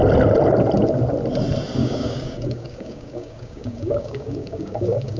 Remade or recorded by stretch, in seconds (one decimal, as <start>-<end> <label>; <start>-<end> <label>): 0.0-1.8 recorded; 1.8-5.2 remade